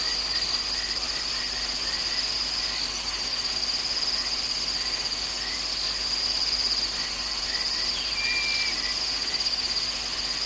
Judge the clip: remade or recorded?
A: recorded